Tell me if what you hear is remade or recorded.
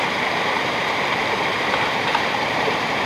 remade